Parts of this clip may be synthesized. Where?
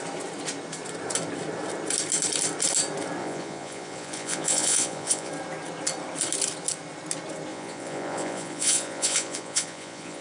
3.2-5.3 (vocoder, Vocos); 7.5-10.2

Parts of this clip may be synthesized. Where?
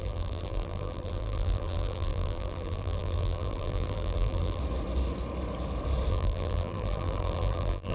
0.0-4.6 (vocoder, BigVGAN v2); 6.1-7.9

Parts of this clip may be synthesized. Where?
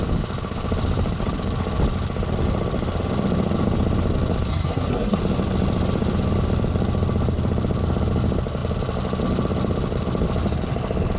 4.5-5.2 (codec, SNAC)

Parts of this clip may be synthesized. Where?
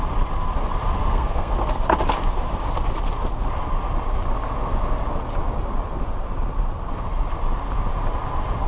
1.0-1.5 (codec, SNAC)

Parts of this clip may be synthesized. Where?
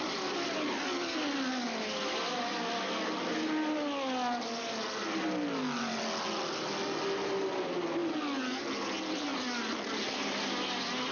none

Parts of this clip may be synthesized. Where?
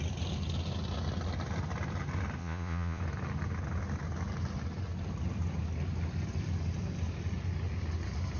2.4-3.0 (vocoder, Vocos)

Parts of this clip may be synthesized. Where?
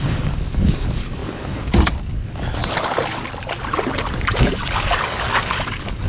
0.0-2.6 (codec, DAC); 4.4-6.1